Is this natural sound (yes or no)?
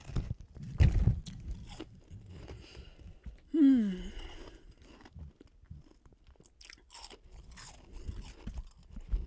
yes